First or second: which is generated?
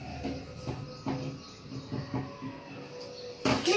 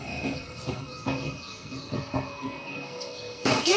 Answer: second